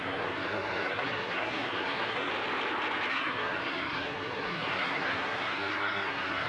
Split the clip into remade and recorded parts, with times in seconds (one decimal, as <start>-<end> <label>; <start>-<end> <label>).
0.0-2.3 remade; 2.3-3.1 recorded; 3.1-6.5 remade